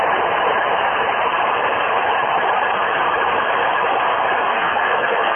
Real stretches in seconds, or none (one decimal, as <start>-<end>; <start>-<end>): 0.0-4.5